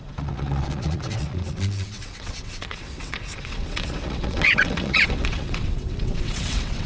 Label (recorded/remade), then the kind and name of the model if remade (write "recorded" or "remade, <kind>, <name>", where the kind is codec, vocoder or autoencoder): remade, vocoder, WaveNeXt